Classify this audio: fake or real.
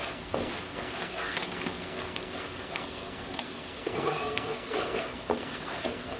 fake